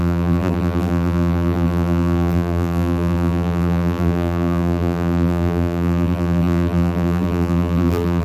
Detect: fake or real fake